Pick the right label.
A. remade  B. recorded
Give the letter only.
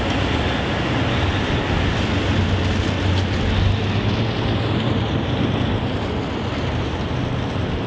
B